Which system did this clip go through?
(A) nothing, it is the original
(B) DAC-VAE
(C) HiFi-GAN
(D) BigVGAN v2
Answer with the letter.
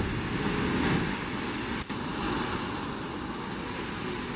A